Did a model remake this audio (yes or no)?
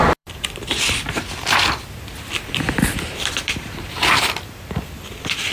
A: yes